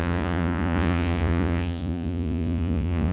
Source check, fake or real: fake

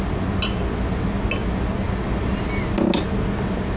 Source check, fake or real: real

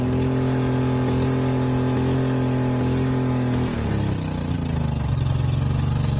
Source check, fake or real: real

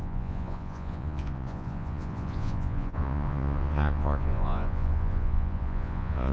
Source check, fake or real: fake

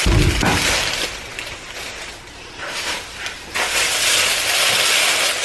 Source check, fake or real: real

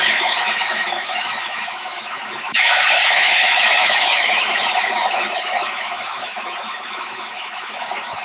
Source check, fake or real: fake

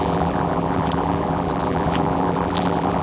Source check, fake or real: fake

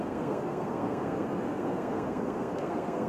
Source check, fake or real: fake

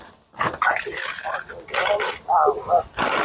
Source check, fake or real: real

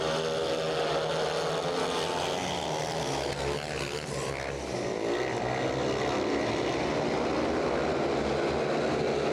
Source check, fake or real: real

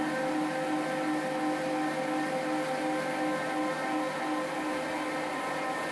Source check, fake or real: real